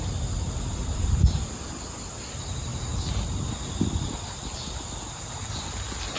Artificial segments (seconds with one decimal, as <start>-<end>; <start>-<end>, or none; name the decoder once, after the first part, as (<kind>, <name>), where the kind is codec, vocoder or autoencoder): none